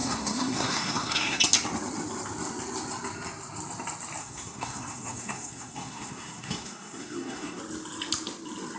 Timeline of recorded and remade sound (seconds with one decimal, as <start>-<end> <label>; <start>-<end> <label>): 0.0-1.4 remade; 1.4-4.2 recorded; 4.2-7.6 remade; 7.6-8.8 recorded